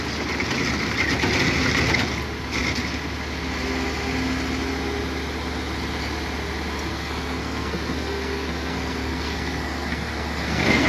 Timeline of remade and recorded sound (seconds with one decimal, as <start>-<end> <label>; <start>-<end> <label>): 0.0-6.9 recorded; 6.9-10.9 remade